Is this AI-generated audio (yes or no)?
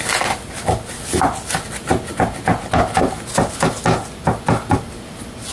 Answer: no